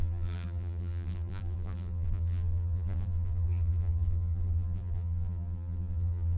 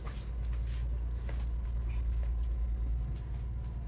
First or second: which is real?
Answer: second